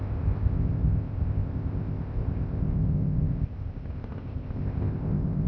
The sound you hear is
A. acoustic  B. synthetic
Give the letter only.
B